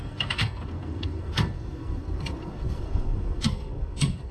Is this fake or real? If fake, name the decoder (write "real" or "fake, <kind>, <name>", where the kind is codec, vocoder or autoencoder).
fake, codec, SNAC